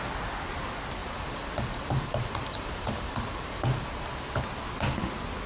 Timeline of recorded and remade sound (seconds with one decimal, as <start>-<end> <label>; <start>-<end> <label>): 0.0-1.0 recorded; 1.0-4.3 remade; 4.3-5.5 recorded